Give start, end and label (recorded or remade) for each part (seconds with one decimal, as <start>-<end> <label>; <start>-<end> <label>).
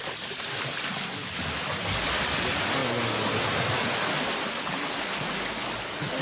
0.0-6.2 recorded